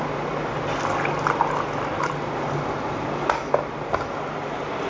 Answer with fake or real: real